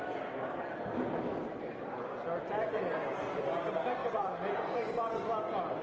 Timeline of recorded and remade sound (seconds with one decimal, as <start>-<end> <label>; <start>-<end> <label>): 0.0-4.0 recorded; 4.0-4.9 remade; 4.9-5.8 recorded